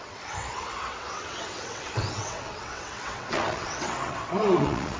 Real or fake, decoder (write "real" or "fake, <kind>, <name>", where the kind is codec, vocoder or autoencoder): fake, vocoder, WaveNeXt